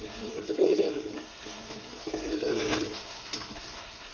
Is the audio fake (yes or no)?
yes